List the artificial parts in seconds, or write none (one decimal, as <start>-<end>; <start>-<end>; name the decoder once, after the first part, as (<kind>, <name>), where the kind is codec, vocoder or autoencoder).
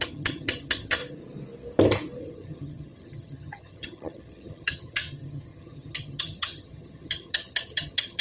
0.0-1.0 (vocoder, HiFi-GAN); 2.2-8.2